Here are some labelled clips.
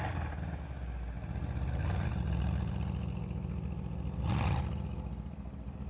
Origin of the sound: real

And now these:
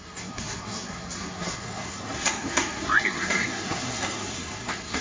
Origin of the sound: fake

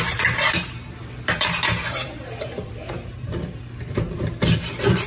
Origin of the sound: fake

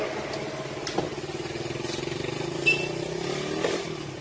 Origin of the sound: real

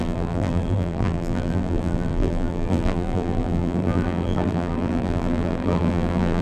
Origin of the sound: fake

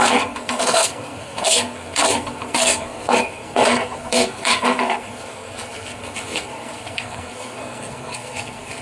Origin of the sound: fake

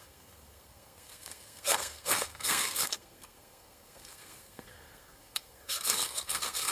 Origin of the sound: fake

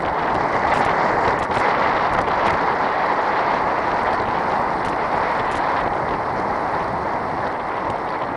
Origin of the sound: real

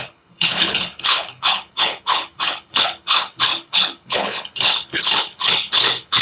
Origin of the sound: fake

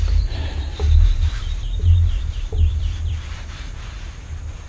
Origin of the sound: fake